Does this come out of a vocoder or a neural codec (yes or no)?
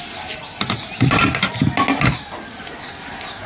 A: no